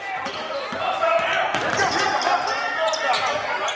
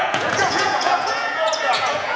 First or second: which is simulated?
second